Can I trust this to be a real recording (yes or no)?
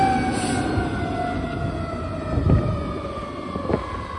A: yes